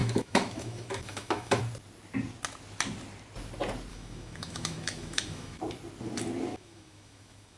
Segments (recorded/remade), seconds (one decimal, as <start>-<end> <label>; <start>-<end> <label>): 0.0-1.6 remade; 1.6-3.9 recorded; 3.9-5.6 remade; 5.6-6.5 recorded; 6.5-7.6 remade